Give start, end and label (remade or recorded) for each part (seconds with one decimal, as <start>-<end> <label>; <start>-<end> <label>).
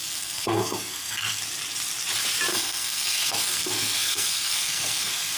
0.0-1.4 remade; 1.4-2.5 recorded; 2.5-5.4 remade